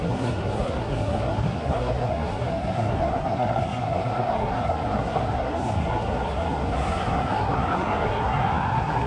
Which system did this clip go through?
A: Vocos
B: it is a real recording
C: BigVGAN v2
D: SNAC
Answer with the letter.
D